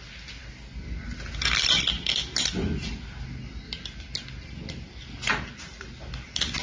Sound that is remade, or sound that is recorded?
recorded